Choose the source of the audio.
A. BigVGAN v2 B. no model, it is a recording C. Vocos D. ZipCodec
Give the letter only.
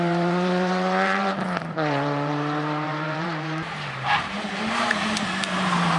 A